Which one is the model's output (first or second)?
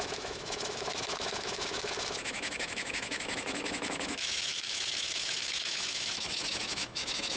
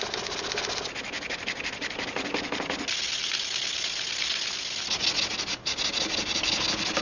first